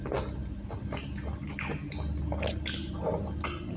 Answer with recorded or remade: recorded